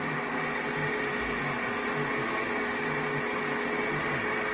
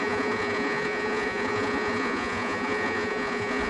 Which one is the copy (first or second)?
second